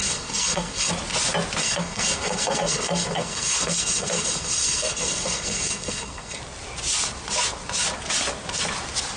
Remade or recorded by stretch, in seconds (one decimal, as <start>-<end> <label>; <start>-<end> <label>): 0.0-0.9 remade; 0.9-1.6 recorded; 1.6-6.4 remade; 6.4-9.2 recorded